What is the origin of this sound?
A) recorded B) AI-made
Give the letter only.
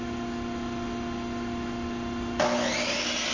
A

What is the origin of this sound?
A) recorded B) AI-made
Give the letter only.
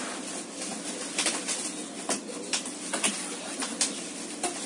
B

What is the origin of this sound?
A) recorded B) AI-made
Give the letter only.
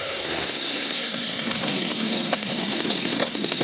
B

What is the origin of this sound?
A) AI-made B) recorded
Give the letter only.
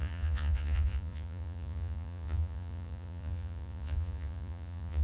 A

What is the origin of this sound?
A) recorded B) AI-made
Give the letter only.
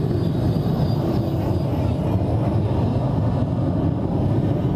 A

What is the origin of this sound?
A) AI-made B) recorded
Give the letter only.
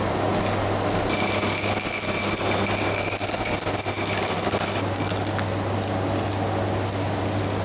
B